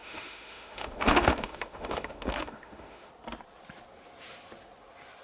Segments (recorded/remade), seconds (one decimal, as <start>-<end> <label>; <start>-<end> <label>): 0.0-3.1 remade; 3.1-5.2 recorded